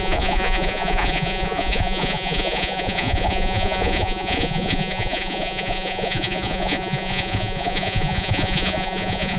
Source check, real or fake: fake